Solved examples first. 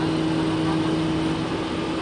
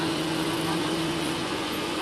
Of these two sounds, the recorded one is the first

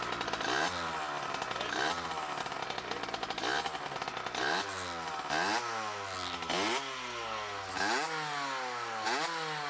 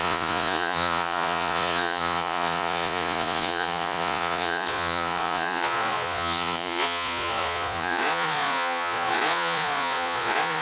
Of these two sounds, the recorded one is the first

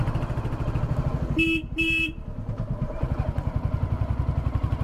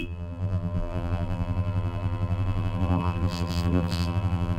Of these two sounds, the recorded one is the first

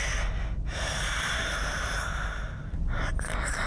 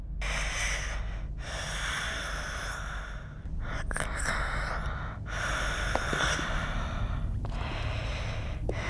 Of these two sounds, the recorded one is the second